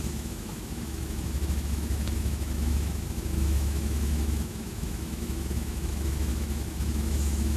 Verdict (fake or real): fake